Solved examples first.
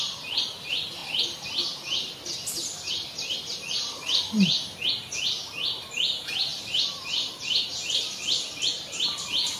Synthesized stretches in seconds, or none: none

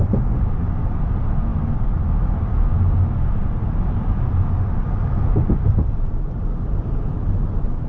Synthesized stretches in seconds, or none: 3.6-6.9 (vocoder, BigVGAN v2)

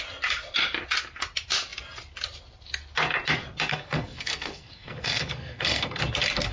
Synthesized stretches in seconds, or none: 3.7-6.0 (codec, SNAC)

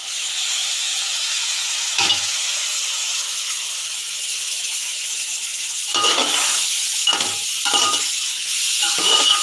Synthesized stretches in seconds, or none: 0.0-7.1 (autoencoder, DAC-VAE); 8.0-9.4

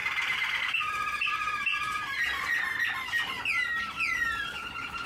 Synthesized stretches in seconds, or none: 0.0-0.6 (vocoder, BigVGAN v2)

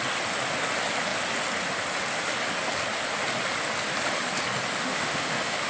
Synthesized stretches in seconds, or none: 4.8-5.7 (autoencoder, DAC-VAE)

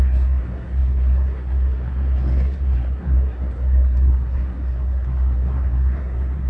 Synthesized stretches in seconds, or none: 0.0-6.5 (codec, SNAC)